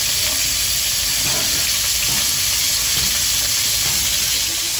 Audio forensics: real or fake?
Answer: real